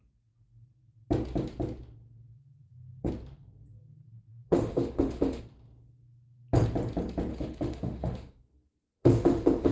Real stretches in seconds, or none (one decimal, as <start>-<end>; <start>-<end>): 0.0-2.3; 3.1-4.3; 5.4-7.3